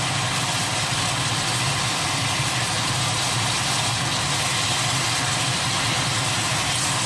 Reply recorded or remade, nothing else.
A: recorded